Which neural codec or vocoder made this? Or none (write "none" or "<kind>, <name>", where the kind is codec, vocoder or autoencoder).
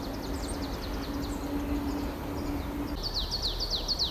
none